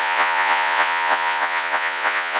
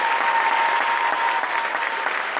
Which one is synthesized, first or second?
first